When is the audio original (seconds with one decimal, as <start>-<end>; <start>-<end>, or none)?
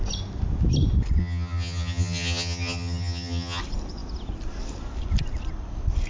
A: 0.0-1.2; 3.6-6.1